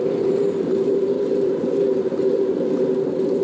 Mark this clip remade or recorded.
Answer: recorded